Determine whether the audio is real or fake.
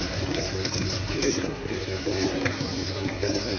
fake